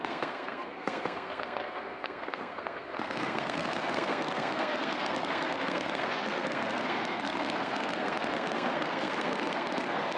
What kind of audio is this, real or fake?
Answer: fake